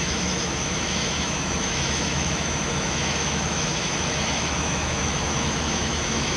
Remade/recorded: remade